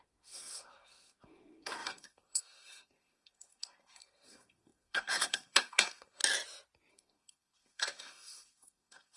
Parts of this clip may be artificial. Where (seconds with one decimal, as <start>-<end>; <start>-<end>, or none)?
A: 0.0-6.2; 6.9-9.2